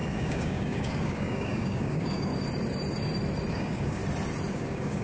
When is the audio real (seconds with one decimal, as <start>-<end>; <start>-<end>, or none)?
2.3-3.5; 4.0-4.5